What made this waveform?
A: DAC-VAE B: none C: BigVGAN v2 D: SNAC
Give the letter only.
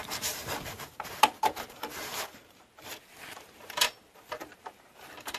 C